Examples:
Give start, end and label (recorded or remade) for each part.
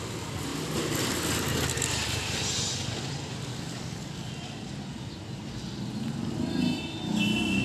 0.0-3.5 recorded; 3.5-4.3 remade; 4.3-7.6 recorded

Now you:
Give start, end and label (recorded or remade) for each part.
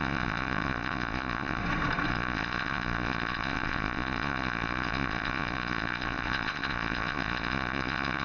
0.0-1.6 remade; 1.6-2.1 recorded; 2.1-8.2 remade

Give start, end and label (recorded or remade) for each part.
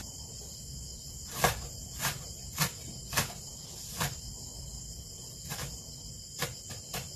0.0-7.2 recorded